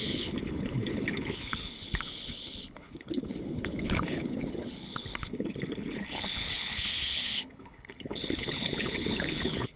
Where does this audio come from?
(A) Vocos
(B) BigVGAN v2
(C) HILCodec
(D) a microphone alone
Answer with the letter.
C